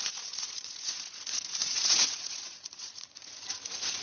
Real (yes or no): no